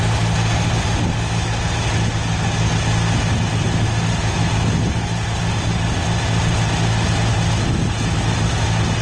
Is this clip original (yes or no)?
yes